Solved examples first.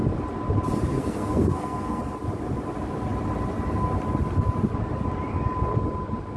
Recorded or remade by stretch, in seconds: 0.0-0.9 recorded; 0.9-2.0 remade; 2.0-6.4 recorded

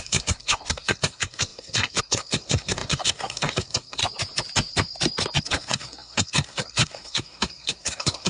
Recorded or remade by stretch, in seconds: 0.0-4.0 remade; 4.0-5.4 recorded; 5.4-8.3 remade

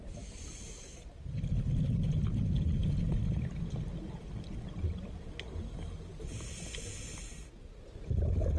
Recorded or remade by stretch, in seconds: 0.0-8.6 recorded

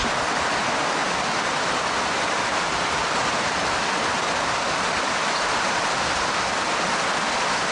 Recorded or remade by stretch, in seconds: 0.0-7.7 recorded